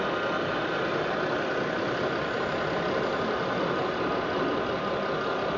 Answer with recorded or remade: recorded